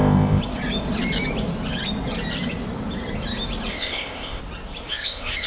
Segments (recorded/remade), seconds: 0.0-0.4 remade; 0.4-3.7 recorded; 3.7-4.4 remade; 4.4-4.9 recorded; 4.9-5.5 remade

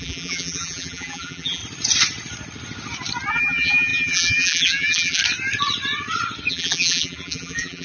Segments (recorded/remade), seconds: 0.0-1.6 remade; 1.6-3.3 recorded; 3.3-5.2 remade; 5.2-6.5 recorded; 6.5-7.8 remade

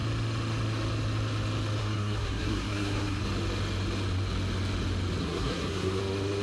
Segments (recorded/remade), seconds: 0.0-1.8 recorded; 1.8-3.2 remade; 3.2-5.2 recorded; 5.2-6.0 remade; 6.0-6.4 recorded